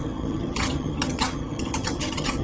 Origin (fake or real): fake